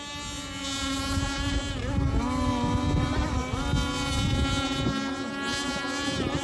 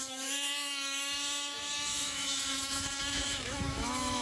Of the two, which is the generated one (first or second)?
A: second